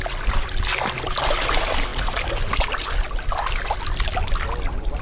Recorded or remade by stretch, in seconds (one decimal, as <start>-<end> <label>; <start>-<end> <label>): 0.0-5.0 recorded